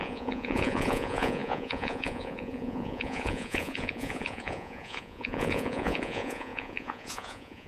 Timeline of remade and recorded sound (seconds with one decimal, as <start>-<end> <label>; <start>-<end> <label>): 0.0-7.7 remade